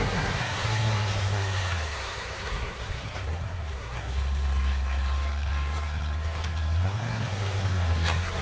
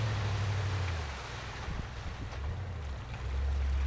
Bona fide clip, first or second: second